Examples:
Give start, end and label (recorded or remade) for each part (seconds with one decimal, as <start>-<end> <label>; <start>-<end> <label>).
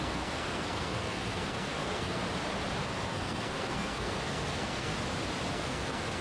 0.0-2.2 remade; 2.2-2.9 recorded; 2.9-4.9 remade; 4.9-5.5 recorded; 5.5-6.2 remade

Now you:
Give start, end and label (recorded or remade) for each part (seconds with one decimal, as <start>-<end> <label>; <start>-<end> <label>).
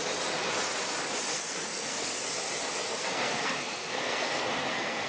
0.0-1.3 recorded; 1.3-2.2 remade; 2.2-2.9 recorded; 2.9-5.1 remade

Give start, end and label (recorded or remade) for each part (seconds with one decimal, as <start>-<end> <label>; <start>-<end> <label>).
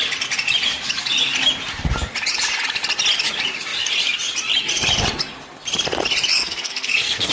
0.0-6.4 recorded; 6.4-7.3 remade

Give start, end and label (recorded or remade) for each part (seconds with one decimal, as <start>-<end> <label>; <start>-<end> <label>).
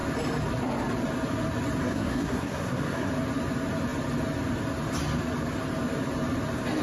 0.0-1.8 recorded; 1.8-3.1 remade; 3.1-6.8 recorded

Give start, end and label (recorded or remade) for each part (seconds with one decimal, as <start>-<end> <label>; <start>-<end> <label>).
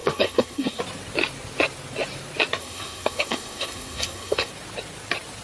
0.0-0.8 remade; 0.8-2.6 recorded; 2.6-4.5 remade; 4.5-5.4 recorded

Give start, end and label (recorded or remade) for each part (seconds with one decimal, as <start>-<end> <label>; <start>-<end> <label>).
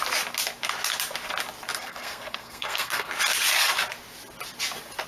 0.0-1.8 recorded; 1.8-3.1 remade; 3.1-5.1 recorded